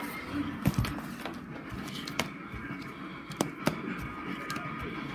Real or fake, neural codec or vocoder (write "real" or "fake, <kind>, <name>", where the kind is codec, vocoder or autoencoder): real